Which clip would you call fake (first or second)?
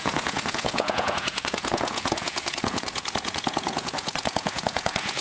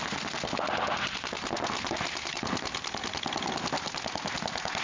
first